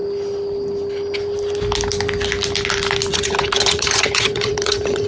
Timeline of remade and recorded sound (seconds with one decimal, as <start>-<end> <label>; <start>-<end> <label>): 0.0-3.1 recorded; 3.1-5.1 remade